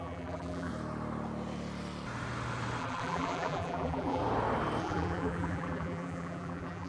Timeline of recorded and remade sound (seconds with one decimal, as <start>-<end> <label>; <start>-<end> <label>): 0.0-0.7 remade; 0.7-2.8 recorded; 2.8-4.2 remade; 4.2-4.8 recorded; 4.8-6.9 remade